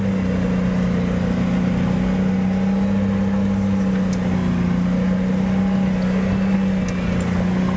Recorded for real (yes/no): yes